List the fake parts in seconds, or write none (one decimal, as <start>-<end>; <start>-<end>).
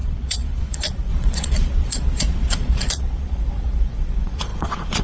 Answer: 0.0-5.0